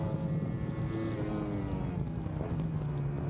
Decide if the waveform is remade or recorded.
recorded